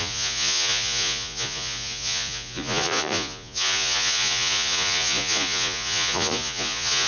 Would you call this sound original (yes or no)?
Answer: no